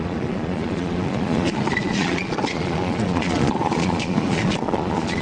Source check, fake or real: fake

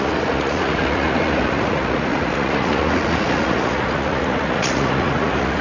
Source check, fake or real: fake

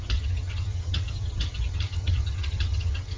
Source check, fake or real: fake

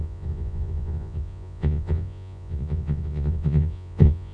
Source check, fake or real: fake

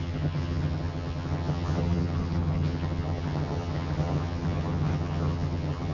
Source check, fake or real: fake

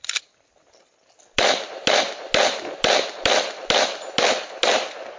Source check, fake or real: real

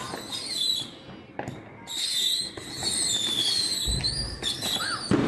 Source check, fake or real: real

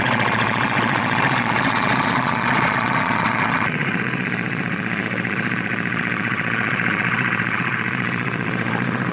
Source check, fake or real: fake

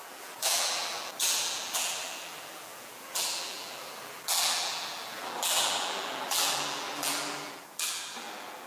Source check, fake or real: fake